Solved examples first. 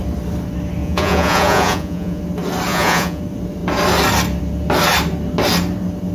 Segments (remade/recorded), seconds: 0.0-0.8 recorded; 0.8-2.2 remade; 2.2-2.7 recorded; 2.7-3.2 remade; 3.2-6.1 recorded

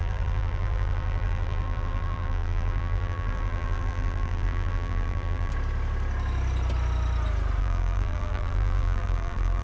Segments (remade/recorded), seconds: 0.0-5.5 remade; 5.5-7.6 recorded; 7.6-9.6 remade

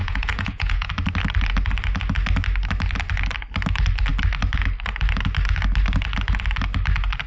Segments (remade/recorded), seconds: 0.0-0.9 remade; 0.9-7.3 recorded